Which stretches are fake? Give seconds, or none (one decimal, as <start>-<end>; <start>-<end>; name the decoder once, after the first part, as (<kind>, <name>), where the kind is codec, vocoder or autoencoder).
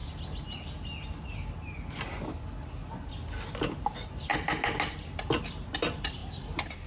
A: 4.3-5.0 (vocoder, BigVGAN v2); 6.2-6.9